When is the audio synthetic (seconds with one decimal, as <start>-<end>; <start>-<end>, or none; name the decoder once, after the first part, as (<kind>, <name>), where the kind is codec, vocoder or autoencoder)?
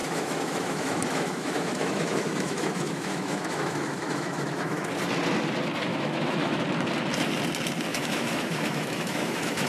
0.0-4.9 (autoencoder, DAC-VAE); 5.9-6.6; 7.9-9.7